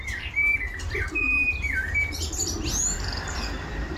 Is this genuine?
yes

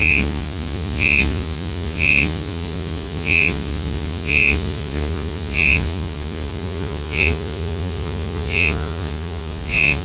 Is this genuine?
no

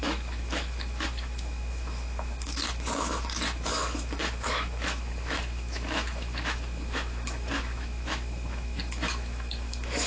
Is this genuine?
no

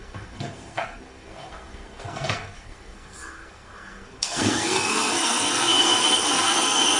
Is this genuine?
no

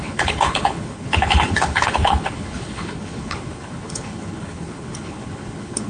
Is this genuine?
no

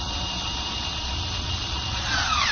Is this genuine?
no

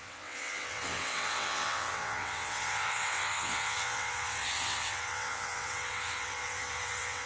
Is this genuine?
no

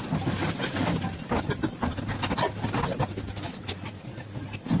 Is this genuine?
yes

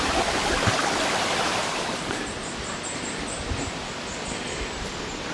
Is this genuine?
no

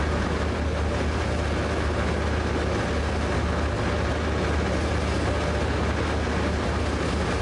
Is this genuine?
yes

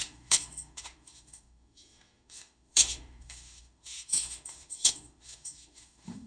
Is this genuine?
no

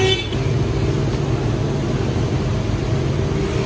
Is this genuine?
yes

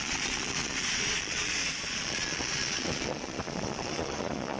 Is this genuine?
no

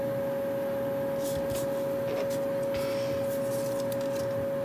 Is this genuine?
yes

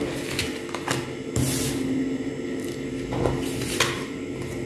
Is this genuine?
yes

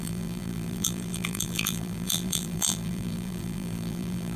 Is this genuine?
no